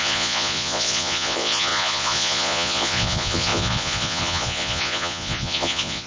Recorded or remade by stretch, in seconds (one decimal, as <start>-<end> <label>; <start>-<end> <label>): 0.0-6.1 remade